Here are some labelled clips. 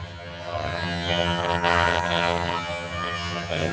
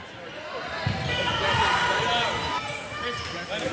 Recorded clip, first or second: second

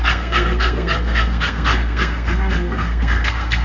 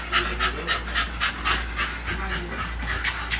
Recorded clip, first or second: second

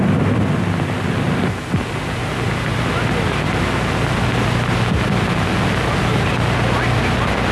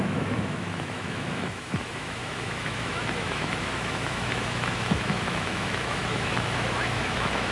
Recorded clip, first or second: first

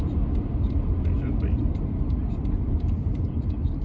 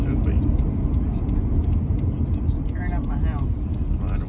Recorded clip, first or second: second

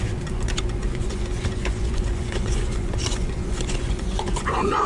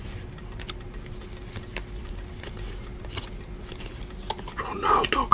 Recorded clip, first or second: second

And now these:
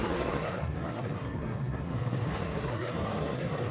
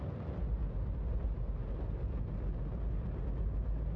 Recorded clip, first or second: second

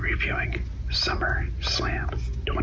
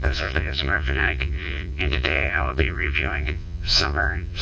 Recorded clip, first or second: first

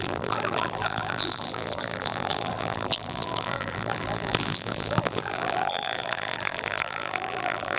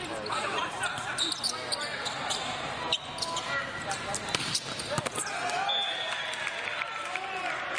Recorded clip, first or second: second